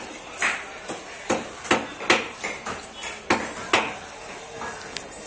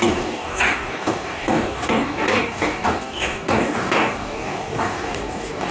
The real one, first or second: first